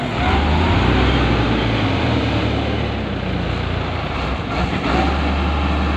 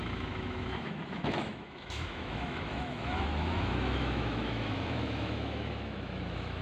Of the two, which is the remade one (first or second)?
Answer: second